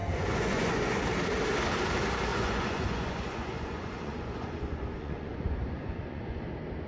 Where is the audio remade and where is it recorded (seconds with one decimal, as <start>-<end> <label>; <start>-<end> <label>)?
0.0-1.0 remade; 1.0-2.3 recorded; 2.3-6.4 remade; 6.4-6.9 recorded